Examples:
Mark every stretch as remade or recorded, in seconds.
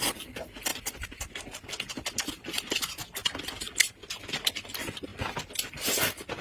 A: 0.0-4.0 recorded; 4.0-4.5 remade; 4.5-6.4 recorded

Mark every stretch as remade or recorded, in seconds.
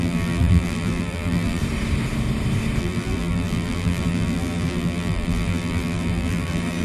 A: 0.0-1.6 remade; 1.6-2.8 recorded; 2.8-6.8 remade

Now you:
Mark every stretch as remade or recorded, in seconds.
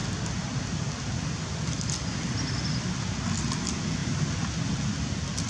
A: 0.0-5.5 recorded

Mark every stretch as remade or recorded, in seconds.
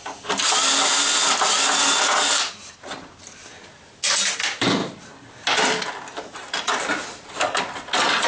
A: 0.0-8.3 recorded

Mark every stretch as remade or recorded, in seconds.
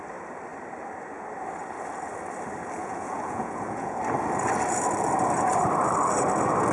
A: 0.0-2.8 recorded; 2.8-4.0 remade; 4.0-6.7 recorded